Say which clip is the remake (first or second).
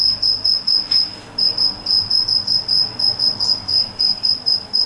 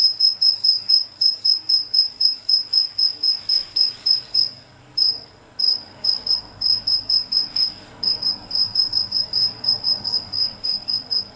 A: second